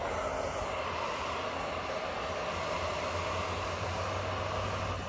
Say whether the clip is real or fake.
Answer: real